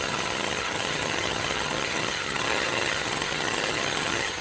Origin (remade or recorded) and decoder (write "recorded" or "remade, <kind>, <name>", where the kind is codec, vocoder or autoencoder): remade, vocoder, HiFi-GAN